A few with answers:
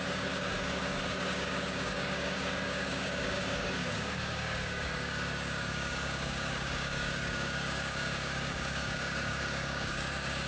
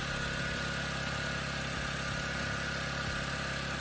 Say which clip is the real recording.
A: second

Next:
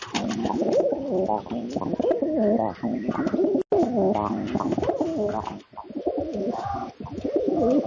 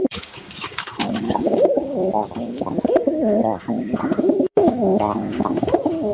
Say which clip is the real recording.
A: first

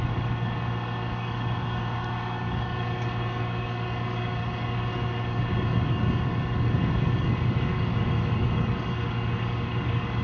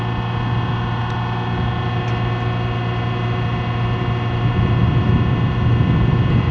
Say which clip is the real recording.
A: second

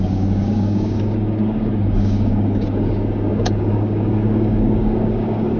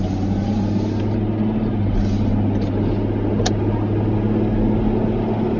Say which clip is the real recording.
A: second